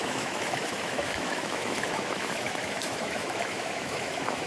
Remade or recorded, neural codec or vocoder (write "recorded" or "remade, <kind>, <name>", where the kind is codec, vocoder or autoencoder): remade, autoencoder, DAC-VAE